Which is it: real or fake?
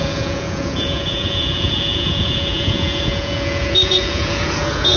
fake